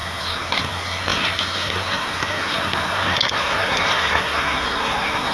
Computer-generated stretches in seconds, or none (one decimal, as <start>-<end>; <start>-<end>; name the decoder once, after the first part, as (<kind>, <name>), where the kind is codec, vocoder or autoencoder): 0.0-5.3 (codec, SNAC)